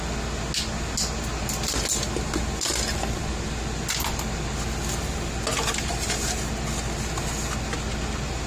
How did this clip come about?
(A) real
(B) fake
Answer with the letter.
A